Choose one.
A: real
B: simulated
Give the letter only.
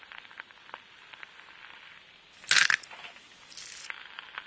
A